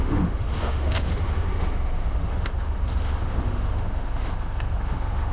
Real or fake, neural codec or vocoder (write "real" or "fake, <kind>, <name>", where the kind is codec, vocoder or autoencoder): fake, autoencoder, DAC-VAE